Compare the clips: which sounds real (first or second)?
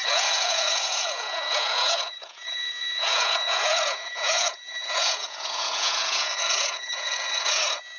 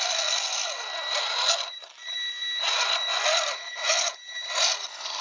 second